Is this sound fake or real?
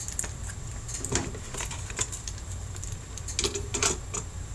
real